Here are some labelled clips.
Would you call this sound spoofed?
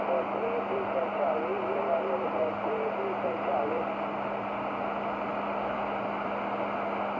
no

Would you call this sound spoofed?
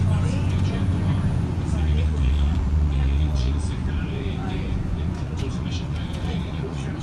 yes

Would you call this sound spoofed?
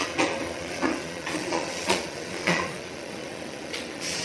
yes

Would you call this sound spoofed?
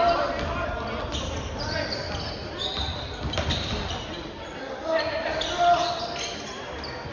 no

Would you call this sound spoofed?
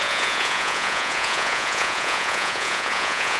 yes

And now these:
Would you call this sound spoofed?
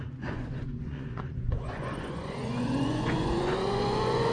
yes